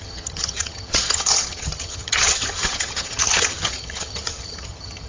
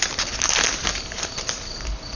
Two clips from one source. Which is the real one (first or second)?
second